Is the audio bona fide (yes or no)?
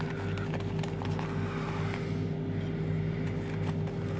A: yes